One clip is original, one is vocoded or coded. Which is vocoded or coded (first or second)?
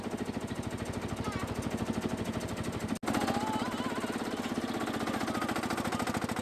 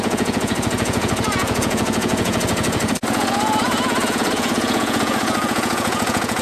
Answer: second